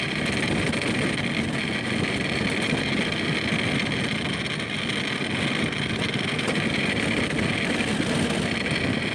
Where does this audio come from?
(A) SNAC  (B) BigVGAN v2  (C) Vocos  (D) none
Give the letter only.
D